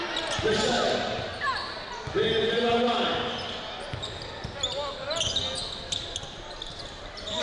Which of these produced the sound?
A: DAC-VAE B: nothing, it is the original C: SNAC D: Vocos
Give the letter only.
B